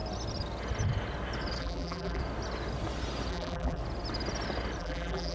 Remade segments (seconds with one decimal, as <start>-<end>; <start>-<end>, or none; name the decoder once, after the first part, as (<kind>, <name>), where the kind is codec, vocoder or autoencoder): 1.6-2.2 (vocoder, BigVGAN v2); 3.3-3.8; 4.8-5.3